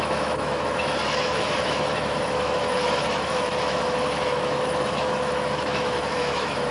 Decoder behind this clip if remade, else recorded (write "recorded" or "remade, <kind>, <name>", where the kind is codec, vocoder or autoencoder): remade, autoencoder, DAC-VAE